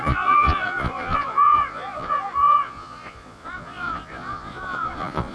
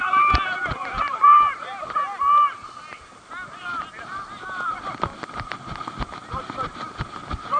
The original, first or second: second